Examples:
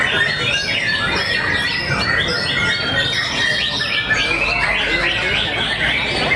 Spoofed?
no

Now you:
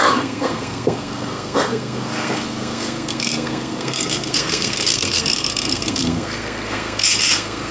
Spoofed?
yes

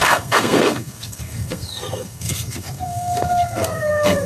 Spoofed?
yes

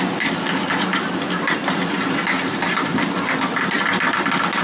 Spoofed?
no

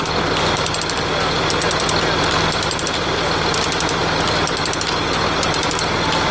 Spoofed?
no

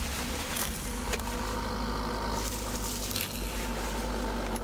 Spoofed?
no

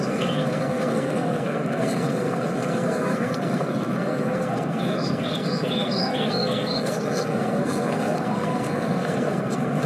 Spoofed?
yes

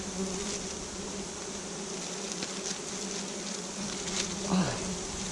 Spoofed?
no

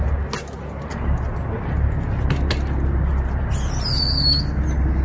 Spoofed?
no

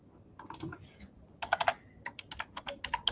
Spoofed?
no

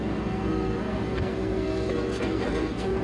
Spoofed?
yes